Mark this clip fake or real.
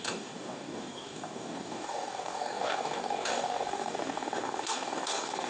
fake